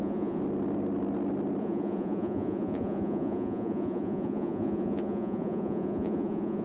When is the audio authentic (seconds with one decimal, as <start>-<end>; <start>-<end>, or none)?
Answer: 0.4-1.6